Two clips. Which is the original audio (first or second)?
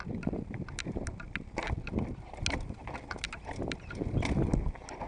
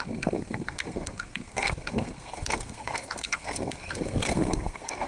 first